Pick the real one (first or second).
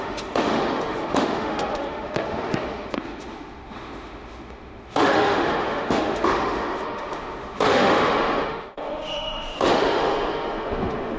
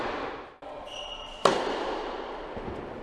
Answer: second